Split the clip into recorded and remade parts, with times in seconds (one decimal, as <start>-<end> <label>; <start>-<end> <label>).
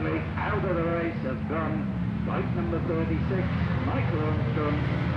0.0-5.2 recorded